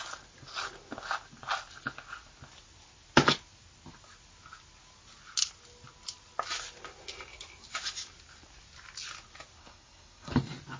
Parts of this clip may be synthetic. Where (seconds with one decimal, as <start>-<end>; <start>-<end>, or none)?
9.6-10.3